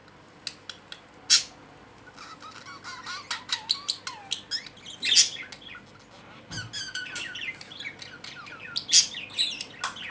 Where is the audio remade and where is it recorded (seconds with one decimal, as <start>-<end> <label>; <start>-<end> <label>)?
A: 0.0-10.1 recorded